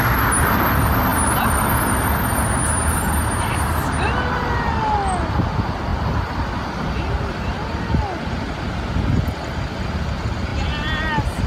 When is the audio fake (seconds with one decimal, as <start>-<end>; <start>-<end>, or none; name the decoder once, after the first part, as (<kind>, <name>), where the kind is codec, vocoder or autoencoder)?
none